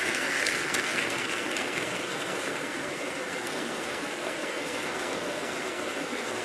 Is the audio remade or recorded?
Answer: remade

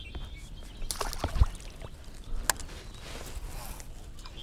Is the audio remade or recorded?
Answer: recorded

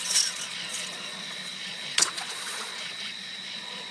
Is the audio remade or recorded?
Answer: remade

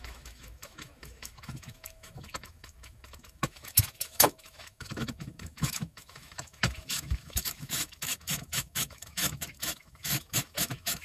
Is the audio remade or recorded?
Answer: remade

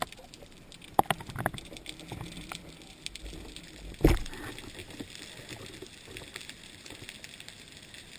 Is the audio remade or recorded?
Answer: recorded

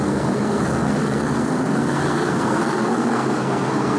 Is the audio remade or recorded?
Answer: remade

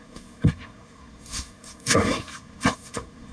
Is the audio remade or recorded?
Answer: remade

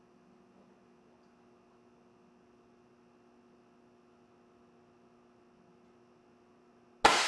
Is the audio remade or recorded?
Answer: recorded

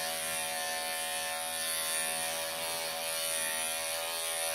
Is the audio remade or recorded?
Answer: recorded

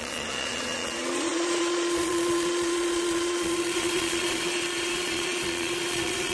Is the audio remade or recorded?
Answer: remade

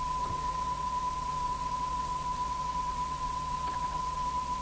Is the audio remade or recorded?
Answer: remade